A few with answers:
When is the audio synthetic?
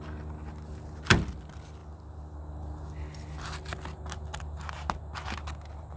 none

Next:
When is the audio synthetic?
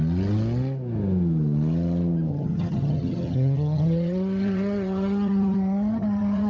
2.3-6.5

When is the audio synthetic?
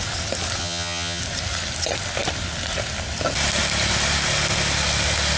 0.6-1.2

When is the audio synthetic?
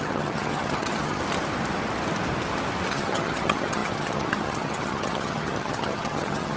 0.0-1.2; 2.9-6.6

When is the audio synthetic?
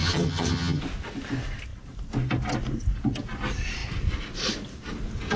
0.0-0.8